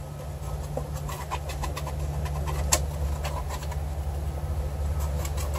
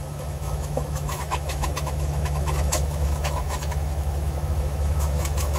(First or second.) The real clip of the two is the first